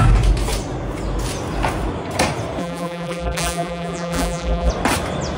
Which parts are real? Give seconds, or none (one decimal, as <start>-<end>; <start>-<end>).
0.0-2.6; 4.7-5.4